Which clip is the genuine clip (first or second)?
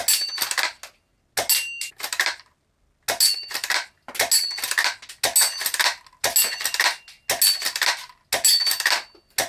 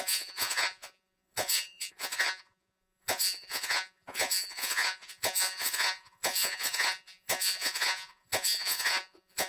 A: first